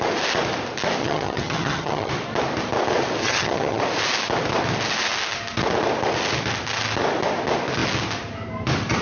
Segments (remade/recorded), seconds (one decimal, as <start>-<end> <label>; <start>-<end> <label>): 0.0-1.0 recorded; 1.0-2.1 remade; 2.1-3.2 recorded; 3.2-3.8 remade; 3.8-9.0 recorded